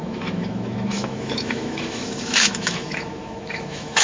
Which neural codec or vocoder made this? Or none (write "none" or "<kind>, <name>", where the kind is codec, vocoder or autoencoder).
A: autoencoder, DAC-VAE